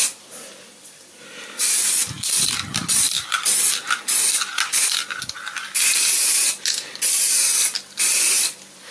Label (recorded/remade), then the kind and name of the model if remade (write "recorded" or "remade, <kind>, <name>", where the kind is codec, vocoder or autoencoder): remade, vocoder, BigVGAN v2